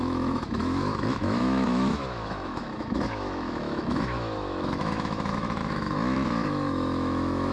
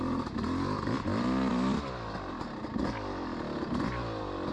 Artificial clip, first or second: first